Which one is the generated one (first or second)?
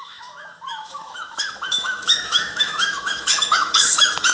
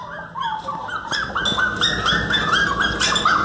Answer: first